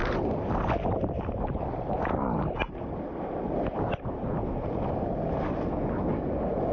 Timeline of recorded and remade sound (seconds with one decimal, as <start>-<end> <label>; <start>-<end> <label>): 0.0-6.7 recorded